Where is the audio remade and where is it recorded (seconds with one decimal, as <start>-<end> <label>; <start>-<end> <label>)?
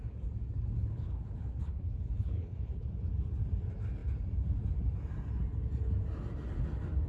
0.0-0.8 recorded; 0.8-2.9 remade; 2.9-7.1 recorded